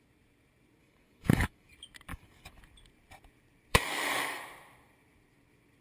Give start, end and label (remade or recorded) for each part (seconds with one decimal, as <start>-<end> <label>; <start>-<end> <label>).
0.0-0.8 recorded; 0.8-1.7 remade; 1.7-2.1 recorded; 2.1-2.6 remade; 2.6-3.7 recorded; 3.7-4.4 remade; 4.4-5.8 recorded